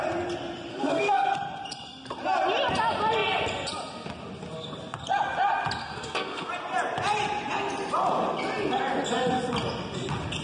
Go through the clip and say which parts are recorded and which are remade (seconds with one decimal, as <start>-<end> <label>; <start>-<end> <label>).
0.0-0.7 recorded; 0.7-1.3 remade; 1.3-5.8 recorded; 5.8-6.5 remade; 6.5-10.4 recorded